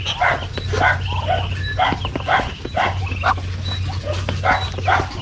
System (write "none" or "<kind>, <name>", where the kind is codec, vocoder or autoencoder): none